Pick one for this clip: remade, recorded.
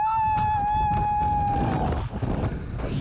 recorded